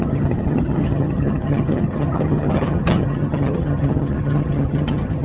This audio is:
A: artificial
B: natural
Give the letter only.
A